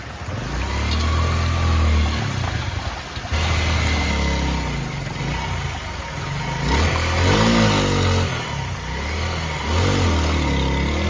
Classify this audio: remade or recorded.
recorded